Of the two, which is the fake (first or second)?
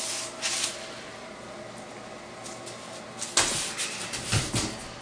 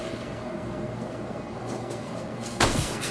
second